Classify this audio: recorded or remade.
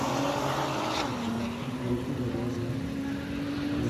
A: recorded